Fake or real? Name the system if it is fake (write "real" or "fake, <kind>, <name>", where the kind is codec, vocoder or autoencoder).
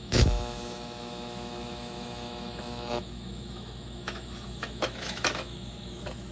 fake, autoencoder, DAC-VAE